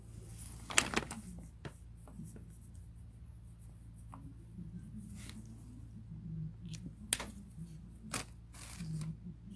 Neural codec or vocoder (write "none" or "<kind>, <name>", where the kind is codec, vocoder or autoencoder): none